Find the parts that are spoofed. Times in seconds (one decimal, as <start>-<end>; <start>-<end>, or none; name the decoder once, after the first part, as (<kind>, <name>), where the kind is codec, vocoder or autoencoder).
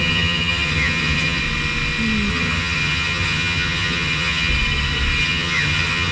0.0-1.4 (vocoder, HiFi-GAN); 2.3-4.5; 5.2-6.1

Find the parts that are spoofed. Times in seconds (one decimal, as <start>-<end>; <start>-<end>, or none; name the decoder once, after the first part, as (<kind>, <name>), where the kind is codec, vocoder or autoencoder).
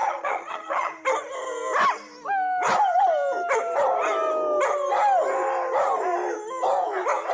0.0-0.9 (vocoder, HiFi-GAN)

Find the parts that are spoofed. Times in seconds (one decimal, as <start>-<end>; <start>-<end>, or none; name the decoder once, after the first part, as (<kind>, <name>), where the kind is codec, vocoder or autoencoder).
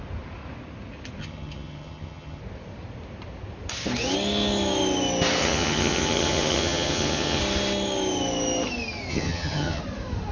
1.2-2.4 (vocoder, HiFi-GAN); 5.4-7.4; 9.1-9.8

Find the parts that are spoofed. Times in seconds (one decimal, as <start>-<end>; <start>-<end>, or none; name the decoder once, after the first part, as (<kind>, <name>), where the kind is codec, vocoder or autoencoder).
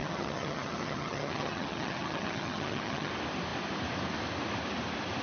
0.0-3.1 (vocoder, HiFi-GAN)